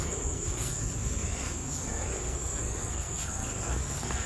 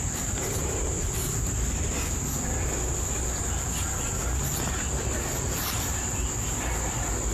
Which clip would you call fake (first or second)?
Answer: first